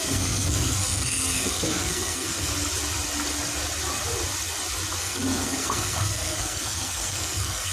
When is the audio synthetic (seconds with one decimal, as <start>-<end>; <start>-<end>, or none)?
0.0-2.5; 5.0-7.7